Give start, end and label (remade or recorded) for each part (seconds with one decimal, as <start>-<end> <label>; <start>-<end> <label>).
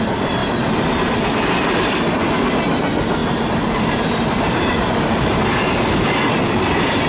0.0-7.1 recorded